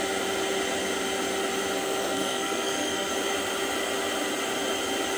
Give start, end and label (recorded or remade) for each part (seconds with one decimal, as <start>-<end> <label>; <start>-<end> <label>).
0.0-1.8 recorded; 1.8-3.1 remade; 3.1-5.2 recorded